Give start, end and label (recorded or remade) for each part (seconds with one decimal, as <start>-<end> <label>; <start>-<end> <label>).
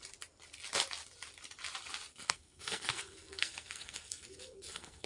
0.0-2.1 recorded; 2.1-5.1 remade